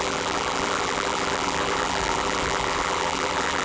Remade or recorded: remade